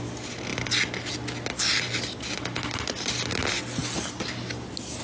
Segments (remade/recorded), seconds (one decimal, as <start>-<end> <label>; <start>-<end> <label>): 0.0-5.0 recorded

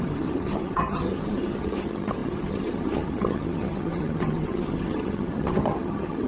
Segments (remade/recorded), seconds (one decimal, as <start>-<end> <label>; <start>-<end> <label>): 0.0-6.3 remade

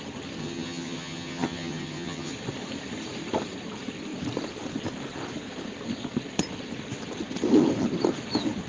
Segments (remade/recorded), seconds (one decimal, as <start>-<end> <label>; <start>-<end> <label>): 0.0-0.4 recorded; 0.4-2.3 remade; 2.3-8.7 recorded